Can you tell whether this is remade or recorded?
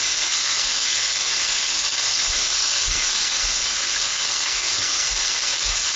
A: remade